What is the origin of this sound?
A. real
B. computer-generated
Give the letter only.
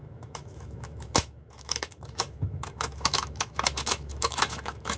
B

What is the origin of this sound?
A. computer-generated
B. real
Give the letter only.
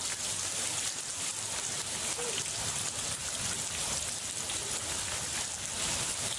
B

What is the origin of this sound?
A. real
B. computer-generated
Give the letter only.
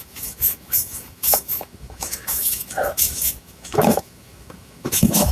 B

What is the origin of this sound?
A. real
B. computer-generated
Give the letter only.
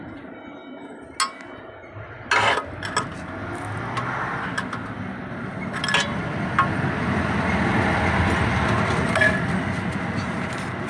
A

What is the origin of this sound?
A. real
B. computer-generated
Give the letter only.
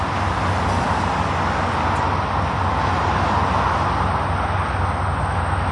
A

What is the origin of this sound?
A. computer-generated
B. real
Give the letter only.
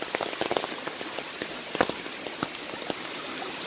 B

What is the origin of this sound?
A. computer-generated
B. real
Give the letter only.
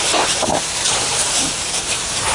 A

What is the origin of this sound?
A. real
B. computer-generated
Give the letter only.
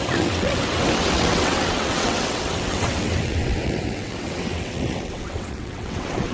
B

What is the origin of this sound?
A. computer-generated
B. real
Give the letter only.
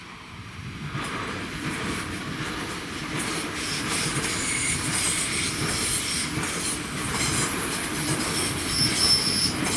B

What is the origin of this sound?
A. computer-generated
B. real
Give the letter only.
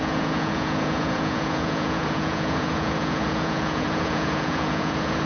A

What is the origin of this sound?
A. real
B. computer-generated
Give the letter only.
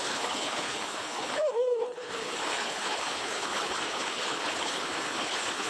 B